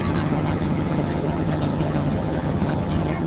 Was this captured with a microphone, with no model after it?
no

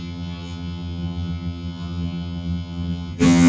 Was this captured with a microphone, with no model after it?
no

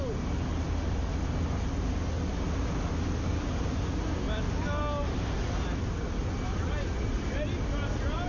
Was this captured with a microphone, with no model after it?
yes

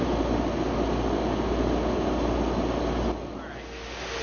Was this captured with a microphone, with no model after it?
yes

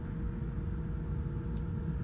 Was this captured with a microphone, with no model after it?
yes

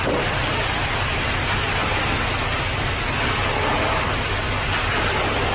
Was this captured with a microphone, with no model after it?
yes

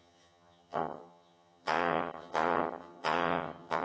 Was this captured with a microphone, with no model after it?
no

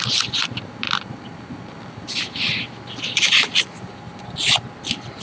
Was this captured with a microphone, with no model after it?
yes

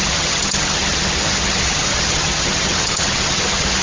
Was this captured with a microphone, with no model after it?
no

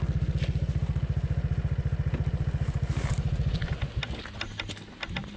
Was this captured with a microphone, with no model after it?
yes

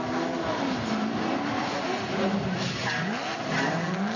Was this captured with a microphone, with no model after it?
yes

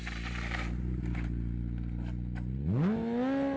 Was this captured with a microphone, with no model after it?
yes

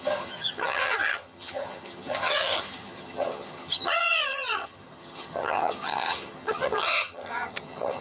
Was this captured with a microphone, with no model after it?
no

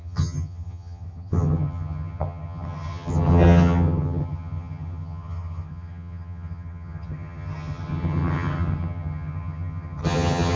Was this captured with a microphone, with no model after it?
no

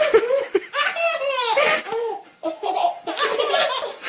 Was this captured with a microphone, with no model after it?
yes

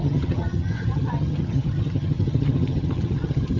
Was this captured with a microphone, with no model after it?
no